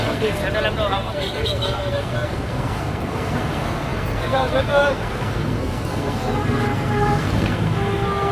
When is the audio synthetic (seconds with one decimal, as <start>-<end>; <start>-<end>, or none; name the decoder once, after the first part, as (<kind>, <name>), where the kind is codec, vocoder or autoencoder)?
0.0-0.4 (codec, SNAC); 0.9-8.3